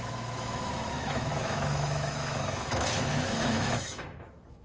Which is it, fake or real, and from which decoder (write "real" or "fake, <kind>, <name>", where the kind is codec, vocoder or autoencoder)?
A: fake, autoencoder, DAC-VAE